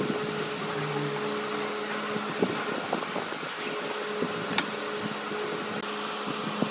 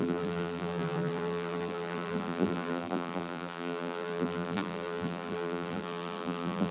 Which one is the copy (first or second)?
second